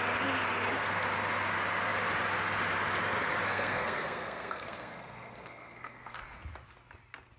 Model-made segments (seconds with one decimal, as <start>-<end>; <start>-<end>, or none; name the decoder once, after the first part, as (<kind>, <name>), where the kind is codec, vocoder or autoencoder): 3.4-6.2 (codec, SNAC)